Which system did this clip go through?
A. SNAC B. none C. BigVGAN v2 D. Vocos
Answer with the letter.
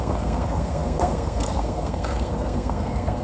A